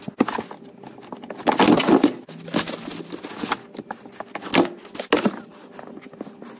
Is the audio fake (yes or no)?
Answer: no